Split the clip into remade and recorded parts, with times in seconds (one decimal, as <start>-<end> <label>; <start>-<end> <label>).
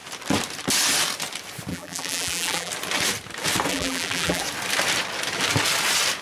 0.0-1.7 recorded; 1.7-2.7 remade; 2.7-3.7 recorded; 3.7-4.4 remade; 4.4-6.2 recorded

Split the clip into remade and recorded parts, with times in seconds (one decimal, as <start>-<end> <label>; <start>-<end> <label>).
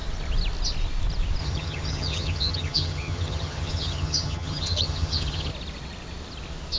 0.0-1.4 recorded; 1.4-5.5 remade; 5.5-6.8 recorded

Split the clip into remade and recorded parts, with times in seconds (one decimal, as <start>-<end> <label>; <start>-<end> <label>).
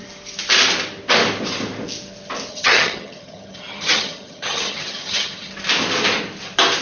0.0-2.5 recorded; 2.5-5.5 remade; 5.5-6.8 recorded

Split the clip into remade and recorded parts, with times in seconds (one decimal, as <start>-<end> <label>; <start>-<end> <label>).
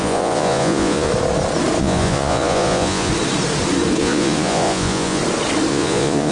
0.0-1.1 remade; 1.1-1.8 recorded; 1.8-3.1 remade; 3.1-4.0 recorded; 4.0-5.2 remade; 5.2-5.7 recorded; 5.7-6.3 remade